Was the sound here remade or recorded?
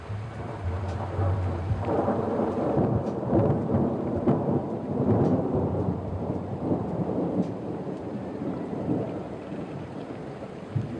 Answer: remade